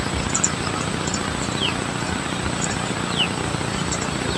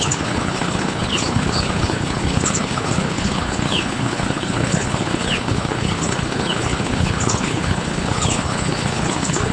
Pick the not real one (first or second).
second